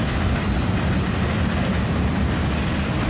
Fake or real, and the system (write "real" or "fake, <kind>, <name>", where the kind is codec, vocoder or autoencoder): real